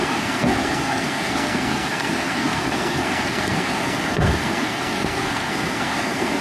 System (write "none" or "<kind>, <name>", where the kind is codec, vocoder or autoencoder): codec, SNAC